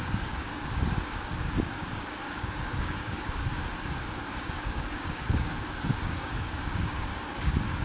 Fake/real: fake